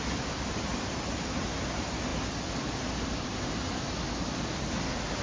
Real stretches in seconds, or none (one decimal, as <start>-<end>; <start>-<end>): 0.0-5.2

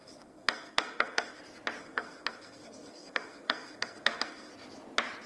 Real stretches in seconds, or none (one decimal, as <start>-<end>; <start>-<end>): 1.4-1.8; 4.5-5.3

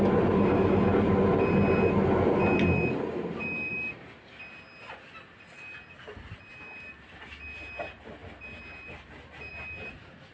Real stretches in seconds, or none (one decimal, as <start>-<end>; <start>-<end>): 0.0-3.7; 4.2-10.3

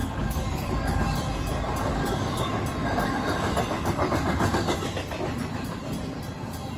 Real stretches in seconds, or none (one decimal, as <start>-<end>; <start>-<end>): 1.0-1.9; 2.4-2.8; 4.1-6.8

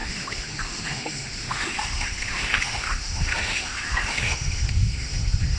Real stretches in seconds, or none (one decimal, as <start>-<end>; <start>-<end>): none

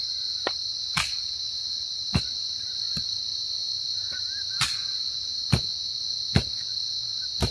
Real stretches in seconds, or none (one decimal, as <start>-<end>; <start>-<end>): 0.0-2.2; 3.6-7.5

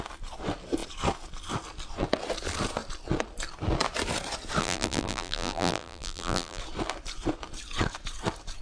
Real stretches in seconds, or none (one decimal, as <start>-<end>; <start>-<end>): 0.0-4.6; 6.6-8.6

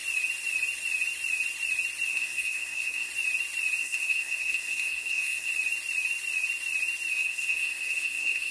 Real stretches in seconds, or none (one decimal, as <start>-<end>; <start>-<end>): 0.0-2.1; 3.1-3.8; 5.5-7.1